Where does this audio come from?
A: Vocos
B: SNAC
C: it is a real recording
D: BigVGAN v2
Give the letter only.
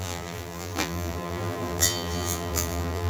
D